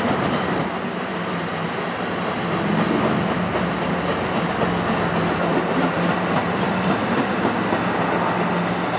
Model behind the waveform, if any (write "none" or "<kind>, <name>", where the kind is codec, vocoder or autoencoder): none